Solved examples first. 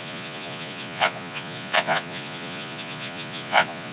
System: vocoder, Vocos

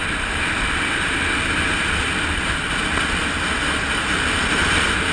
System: none